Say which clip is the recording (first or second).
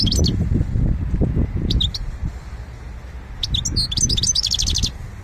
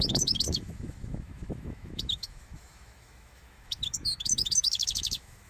first